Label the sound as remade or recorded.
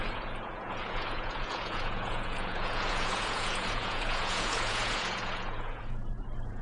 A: remade